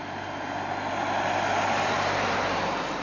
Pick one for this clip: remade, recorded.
recorded